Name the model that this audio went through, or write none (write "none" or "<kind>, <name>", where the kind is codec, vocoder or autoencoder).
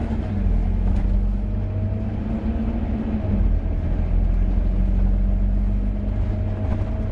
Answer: none